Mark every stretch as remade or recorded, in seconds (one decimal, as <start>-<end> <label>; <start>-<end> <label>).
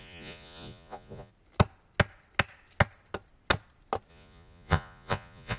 0.0-1.3 remade; 1.3-4.1 recorded; 4.1-5.6 remade